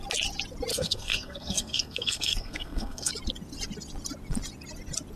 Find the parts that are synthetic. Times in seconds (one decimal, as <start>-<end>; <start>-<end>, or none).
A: 0.7-3.1